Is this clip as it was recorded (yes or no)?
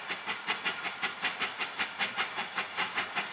yes